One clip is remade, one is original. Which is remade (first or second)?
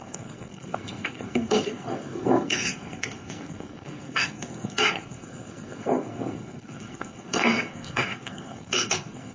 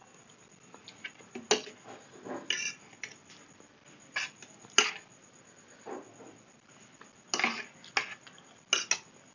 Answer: first